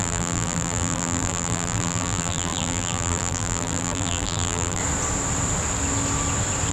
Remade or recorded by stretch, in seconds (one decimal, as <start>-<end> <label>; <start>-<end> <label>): 0.0-4.8 remade; 4.8-6.7 recorded